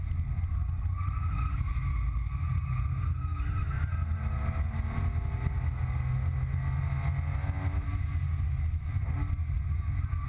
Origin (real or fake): real